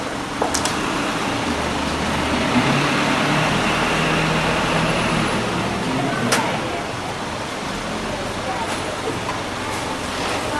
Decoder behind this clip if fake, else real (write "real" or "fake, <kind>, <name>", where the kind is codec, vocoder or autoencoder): real